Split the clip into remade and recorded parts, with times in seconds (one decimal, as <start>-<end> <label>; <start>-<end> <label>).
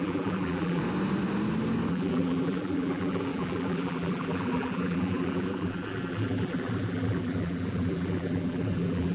0.0-0.8 remade; 0.8-1.9 recorded; 1.9-9.1 remade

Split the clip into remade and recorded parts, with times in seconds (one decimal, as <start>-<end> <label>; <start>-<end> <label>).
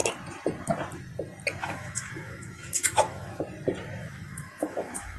0.0-1.6 recorded; 1.6-3.4 remade; 3.4-4.0 recorded; 4.0-5.2 remade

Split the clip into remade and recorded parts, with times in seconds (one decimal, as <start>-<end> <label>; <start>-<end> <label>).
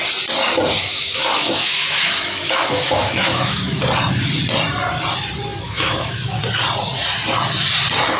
0.0-0.8 recorded; 0.8-3.8 remade; 3.8-5.5 recorded; 5.5-6.4 remade; 6.4-8.2 recorded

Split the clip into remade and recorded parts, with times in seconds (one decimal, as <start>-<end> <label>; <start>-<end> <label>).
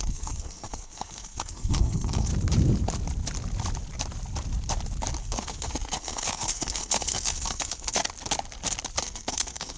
0.0-2.3 remade; 2.3-5.2 recorded; 5.2-8.0 remade; 8.0-9.0 recorded; 9.0-9.8 remade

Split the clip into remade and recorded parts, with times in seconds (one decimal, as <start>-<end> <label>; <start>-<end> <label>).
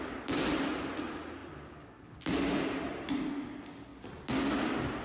0.0-5.0 recorded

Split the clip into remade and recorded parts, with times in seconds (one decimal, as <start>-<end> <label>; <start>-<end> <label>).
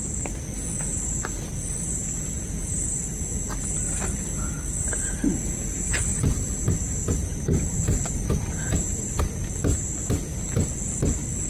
0.0-6.1 recorded; 6.1-9.2 remade; 9.2-11.5 recorded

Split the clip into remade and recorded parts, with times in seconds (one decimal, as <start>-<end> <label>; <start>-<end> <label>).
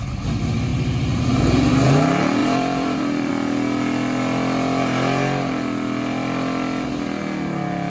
0.0-0.7 recorded; 0.7-1.7 remade; 1.7-2.4 recorded; 2.4-3.3 remade; 3.3-7.9 recorded